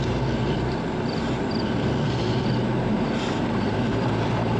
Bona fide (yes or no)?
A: yes